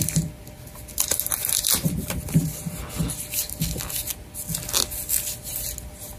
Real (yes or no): yes